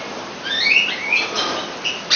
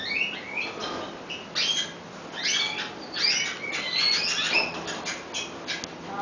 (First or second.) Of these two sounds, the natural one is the second